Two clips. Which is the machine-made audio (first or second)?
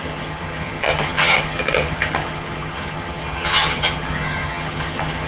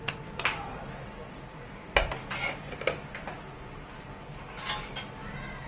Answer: first